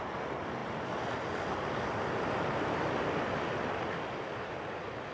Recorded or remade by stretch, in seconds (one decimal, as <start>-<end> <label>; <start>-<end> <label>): 0.0-5.1 recorded